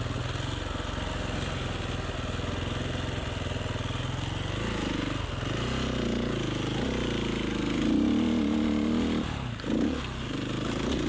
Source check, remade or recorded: recorded